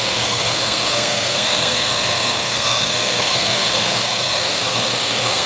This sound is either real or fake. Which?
fake